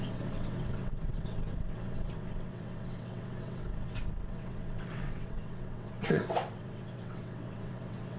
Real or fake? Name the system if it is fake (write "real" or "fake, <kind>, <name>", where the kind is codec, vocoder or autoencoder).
fake, vocoder, WaveNeXt